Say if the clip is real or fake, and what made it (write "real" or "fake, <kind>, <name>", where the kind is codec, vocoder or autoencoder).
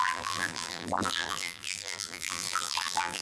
fake, vocoder, BigVGAN v2